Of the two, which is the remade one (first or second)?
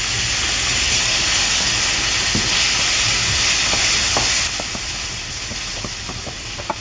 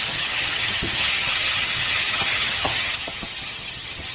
second